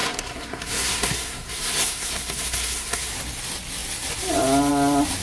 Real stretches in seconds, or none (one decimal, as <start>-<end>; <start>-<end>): 3.1-5.2